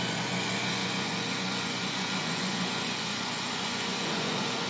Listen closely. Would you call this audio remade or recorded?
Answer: remade